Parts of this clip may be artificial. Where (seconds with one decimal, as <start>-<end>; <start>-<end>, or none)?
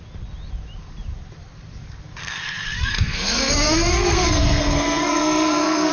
2.2-5.9